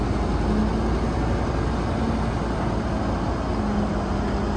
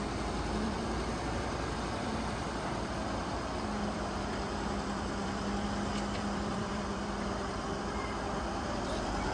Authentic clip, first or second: first